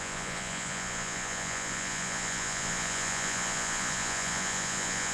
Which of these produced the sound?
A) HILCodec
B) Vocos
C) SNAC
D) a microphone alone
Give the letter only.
B